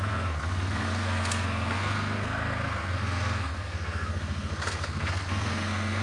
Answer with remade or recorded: remade